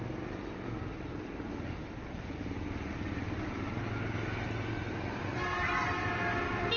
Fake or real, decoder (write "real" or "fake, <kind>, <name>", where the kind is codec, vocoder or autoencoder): real